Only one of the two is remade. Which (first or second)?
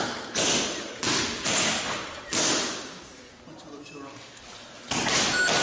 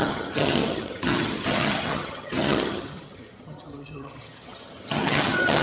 second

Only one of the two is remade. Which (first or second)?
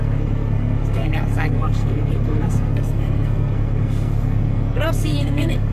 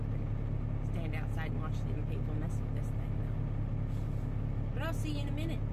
first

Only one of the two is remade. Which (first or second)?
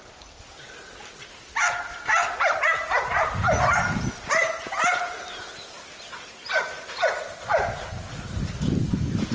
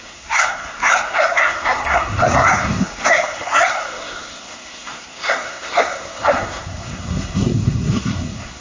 second